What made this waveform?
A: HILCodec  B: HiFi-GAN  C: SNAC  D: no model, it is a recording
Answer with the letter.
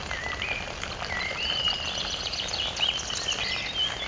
D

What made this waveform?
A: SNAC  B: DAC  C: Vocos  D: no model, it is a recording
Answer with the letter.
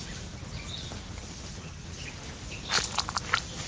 D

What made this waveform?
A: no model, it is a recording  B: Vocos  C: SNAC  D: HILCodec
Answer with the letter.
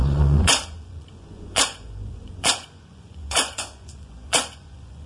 B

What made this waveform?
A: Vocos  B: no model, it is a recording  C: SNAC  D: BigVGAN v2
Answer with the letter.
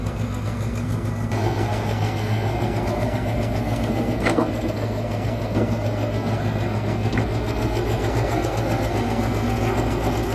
C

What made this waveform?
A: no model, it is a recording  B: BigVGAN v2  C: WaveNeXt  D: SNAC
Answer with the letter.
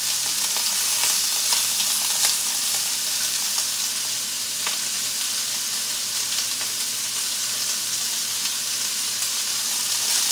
A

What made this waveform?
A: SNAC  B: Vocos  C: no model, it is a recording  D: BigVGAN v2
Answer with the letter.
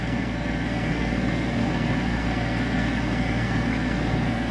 A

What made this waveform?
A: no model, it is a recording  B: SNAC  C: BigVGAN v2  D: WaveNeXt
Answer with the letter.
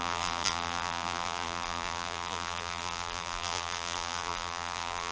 C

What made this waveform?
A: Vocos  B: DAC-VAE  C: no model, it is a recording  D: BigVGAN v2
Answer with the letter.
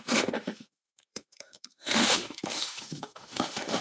B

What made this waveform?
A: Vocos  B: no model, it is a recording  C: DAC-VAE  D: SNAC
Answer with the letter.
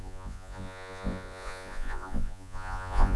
A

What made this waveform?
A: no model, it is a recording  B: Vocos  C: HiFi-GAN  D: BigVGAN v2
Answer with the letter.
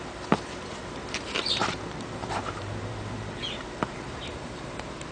D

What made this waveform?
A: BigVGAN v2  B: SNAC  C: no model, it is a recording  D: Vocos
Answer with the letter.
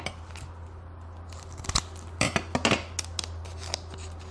C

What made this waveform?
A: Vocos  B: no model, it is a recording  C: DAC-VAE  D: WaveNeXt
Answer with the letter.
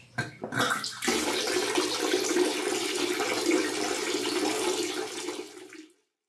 B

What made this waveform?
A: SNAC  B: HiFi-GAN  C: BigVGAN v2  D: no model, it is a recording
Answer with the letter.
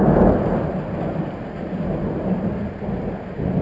D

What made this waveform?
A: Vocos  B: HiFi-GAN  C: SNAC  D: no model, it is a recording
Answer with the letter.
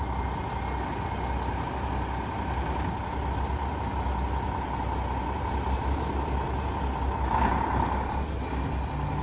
D